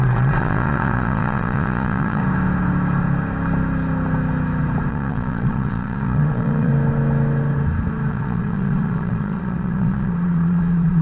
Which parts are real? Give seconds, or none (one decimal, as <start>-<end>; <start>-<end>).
2.2-4.9; 6.7-8.1